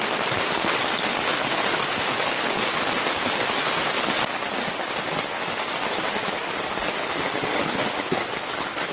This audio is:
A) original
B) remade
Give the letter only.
A